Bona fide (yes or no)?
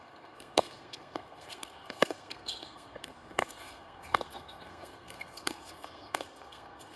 no